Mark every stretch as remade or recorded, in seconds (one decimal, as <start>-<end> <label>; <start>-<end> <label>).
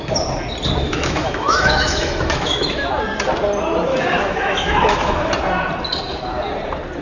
0.0-0.8 recorded; 0.8-2.9 remade; 2.9-3.9 recorded; 3.9-5.3 remade; 5.3-7.0 recorded